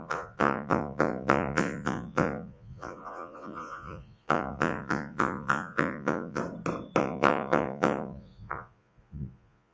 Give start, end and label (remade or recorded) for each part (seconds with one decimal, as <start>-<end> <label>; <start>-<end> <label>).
0.0-6.4 remade; 6.4-7.0 recorded; 7.0-9.7 remade